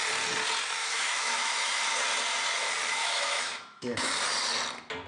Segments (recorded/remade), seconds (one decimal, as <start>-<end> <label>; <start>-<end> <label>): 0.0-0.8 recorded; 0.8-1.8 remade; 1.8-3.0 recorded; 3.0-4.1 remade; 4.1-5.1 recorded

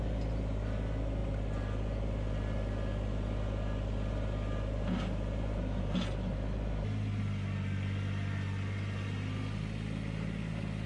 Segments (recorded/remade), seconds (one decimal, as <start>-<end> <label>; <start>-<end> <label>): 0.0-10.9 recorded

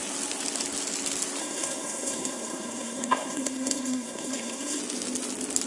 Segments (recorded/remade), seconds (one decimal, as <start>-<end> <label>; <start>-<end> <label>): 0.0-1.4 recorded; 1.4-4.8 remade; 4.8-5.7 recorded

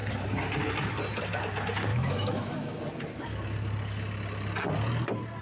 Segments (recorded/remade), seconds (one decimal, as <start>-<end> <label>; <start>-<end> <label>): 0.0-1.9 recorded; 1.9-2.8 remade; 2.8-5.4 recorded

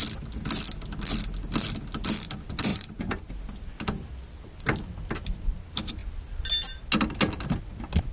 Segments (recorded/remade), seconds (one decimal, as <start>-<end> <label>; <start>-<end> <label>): 0.0-2.7 recorded; 2.7-3.3 remade; 3.3-8.1 recorded